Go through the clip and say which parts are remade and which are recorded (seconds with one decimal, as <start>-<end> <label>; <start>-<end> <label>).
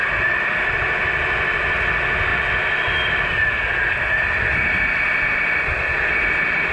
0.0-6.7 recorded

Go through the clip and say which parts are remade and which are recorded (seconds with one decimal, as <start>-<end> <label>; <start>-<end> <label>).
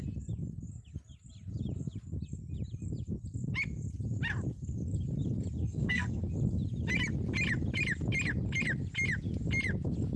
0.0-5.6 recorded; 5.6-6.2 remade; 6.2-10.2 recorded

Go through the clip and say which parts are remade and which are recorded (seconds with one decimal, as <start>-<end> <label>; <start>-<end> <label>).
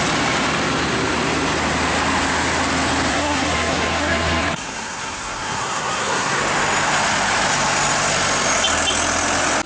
0.0-3.1 recorded; 3.1-6.4 remade; 6.4-9.7 recorded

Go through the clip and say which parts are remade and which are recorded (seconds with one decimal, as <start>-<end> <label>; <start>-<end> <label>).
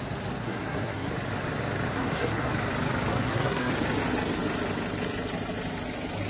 0.0-0.4 recorded; 0.4-1.1 remade; 1.1-1.9 recorded; 1.9-2.5 remade; 2.5-3.1 recorded; 3.1-3.7 remade; 3.7-6.3 recorded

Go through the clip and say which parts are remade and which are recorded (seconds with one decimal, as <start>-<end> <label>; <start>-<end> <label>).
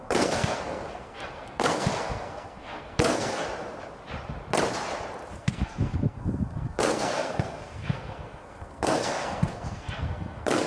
0.0-3.4 remade; 3.4-5.3 recorded; 5.3-10.7 remade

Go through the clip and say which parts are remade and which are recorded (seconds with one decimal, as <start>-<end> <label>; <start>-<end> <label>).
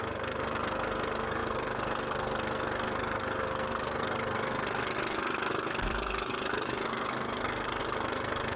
0.0-8.6 remade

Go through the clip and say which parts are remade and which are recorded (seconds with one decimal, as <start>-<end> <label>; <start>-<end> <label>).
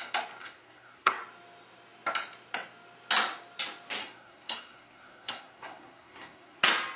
0.0-0.4 recorded; 0.4-1.2 remade; 1.2-4.0 recorded; 4.0-6.6 remade; 6.6-7.0 recorded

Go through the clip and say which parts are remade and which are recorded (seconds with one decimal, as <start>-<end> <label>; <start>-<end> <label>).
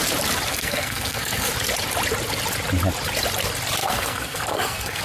0.0-0.5 recorded; 0.5-1.5 remade; 1.5-3.8 recorded; 3.8-5.0 remade